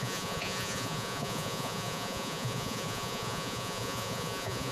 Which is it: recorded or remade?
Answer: remade